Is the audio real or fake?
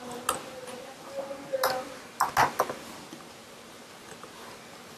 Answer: real